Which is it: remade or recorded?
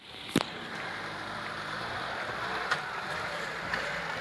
remade